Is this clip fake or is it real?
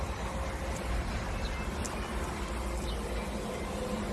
real